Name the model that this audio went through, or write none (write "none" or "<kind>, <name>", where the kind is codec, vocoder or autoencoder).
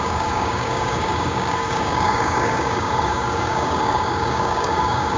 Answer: codec, DAC